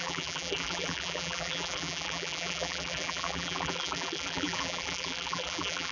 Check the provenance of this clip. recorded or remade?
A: remade